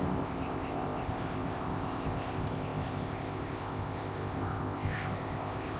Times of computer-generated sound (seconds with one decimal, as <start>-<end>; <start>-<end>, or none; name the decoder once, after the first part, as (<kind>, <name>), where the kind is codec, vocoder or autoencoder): 0.0-5.8 (codec, ZipCodec)